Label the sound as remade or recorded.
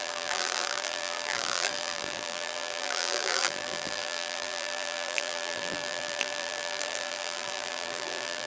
remade